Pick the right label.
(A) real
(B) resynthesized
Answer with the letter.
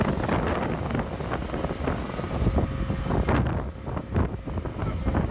A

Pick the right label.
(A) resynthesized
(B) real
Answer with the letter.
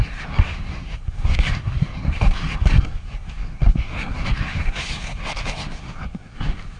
A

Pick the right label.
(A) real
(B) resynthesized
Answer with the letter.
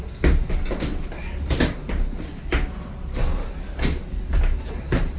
A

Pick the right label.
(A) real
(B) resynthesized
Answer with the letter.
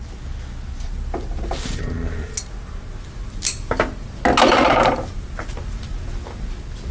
A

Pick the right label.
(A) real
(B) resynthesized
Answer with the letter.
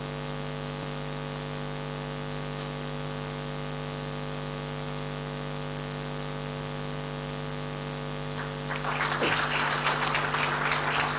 A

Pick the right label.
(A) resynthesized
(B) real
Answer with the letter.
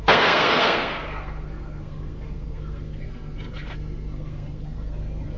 A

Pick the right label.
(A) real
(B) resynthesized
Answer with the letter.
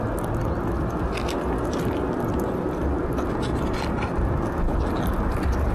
A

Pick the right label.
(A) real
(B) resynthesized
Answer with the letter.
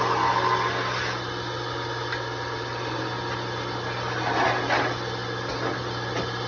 A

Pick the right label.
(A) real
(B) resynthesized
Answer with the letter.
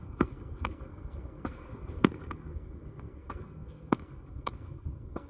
B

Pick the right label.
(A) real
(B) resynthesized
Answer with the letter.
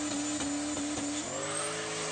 A